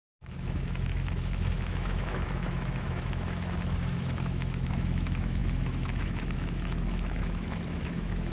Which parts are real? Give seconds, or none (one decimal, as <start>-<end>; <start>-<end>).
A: none